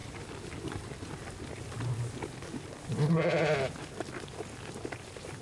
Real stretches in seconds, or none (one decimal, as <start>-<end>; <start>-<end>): 0.0-5.4